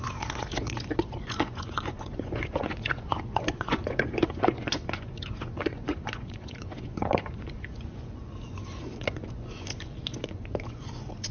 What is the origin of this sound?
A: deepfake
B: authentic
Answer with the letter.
A